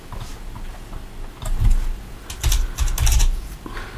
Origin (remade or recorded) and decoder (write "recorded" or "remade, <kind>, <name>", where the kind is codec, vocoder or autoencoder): recorded